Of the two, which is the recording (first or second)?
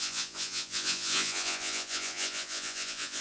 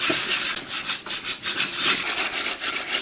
second